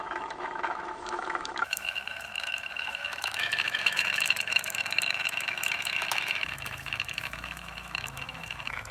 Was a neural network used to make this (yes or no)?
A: yes